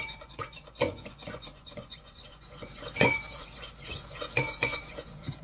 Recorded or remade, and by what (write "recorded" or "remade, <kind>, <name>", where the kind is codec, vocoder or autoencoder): remade, vocoder, Vocos